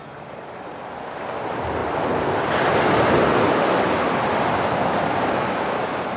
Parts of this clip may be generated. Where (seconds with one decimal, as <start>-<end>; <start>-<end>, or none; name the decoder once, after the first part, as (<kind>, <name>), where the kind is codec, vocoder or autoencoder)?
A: none